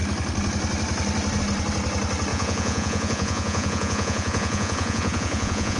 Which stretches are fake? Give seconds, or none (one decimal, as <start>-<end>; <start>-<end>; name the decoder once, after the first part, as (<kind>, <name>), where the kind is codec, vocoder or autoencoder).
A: 2.3-5.8 (vocoder, Vocos)